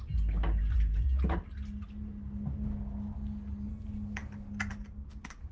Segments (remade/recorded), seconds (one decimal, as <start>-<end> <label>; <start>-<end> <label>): 0.0-5.5 recorded